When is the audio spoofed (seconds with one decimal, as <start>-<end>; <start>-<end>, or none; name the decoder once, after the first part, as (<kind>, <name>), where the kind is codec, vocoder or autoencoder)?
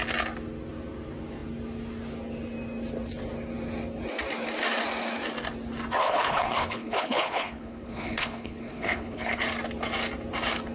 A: 6.0-9.4 (codec, HILCodec)